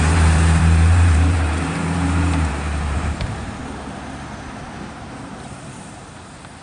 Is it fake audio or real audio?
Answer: fake